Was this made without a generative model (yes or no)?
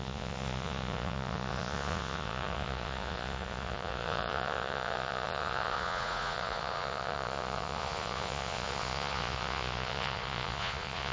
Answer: no